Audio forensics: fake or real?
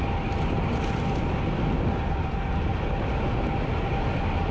real